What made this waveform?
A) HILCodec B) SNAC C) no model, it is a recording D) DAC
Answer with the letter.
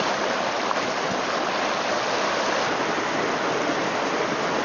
C